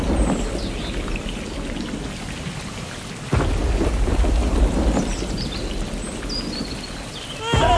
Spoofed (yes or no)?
no